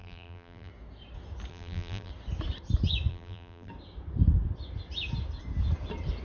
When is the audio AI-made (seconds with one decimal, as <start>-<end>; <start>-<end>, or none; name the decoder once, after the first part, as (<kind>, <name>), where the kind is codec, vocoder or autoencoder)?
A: 0.0-0.7 (vocoder, BigVGAN v2); 1.5-2.1; 3.1-3.7